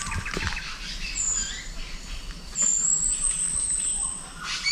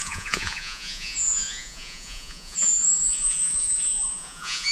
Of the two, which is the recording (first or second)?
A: first